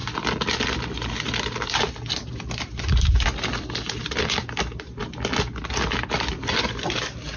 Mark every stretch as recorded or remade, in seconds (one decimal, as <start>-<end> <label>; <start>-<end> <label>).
0.0-7.4 recorded